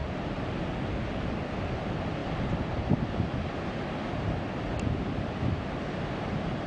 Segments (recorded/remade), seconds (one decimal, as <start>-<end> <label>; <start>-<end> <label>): 0.0-0.5 remade; 0.5-6.7 recorded